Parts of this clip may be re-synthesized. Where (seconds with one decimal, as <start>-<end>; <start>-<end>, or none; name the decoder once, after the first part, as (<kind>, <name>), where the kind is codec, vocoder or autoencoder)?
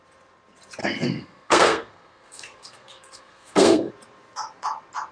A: 0.8-3.9 (codec, SNAC)